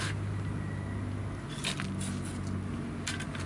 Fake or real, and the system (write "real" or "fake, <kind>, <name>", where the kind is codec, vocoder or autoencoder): real